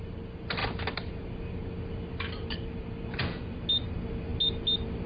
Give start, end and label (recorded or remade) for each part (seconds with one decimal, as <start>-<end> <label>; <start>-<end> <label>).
0.0-5.1 recorded